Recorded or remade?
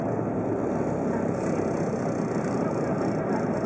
recorded